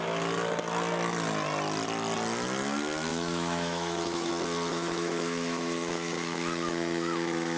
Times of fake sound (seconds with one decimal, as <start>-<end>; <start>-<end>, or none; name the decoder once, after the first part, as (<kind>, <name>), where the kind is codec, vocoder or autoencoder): 3.1-4.3 (autoencoder, DAC-VAE); 4.7-7.6